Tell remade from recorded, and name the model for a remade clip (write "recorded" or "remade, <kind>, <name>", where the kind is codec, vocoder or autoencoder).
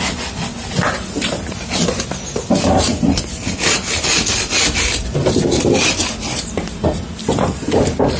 recorded